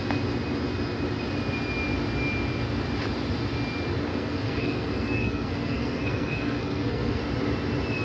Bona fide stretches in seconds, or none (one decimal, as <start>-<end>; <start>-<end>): 0.0-4.1; 7.2-8.0